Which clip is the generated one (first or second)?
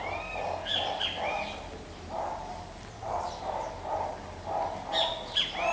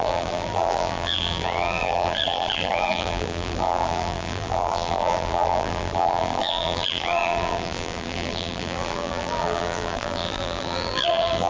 second